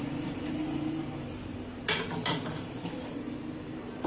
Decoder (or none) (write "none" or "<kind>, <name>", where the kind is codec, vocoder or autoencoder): vocoder, BigVGAN v2